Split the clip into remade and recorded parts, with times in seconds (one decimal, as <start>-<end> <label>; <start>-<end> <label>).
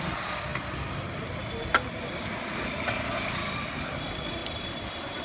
0.0-0.5 remade; 0.5-3.6 recorded; 3.6-5.2 remade